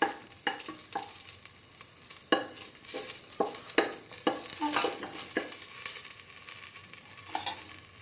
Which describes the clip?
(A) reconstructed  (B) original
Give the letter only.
B